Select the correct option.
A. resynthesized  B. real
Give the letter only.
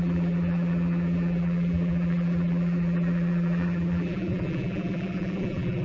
A